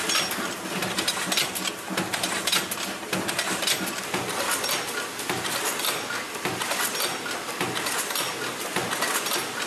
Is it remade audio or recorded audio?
recorded